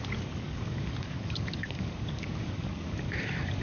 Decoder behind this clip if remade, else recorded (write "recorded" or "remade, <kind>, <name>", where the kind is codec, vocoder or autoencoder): remade, codec, DAC